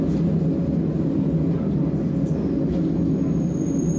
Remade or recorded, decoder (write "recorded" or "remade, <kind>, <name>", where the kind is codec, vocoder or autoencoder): recorded